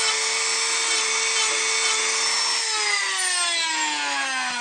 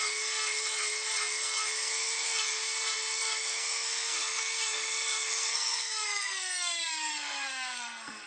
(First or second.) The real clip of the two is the first